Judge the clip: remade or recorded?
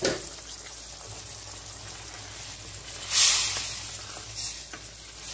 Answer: recorded